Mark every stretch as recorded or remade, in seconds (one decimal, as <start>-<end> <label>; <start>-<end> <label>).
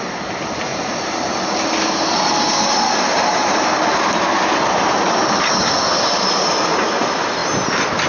0.0-8.1 recorded